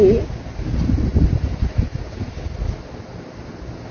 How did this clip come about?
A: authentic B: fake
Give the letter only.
A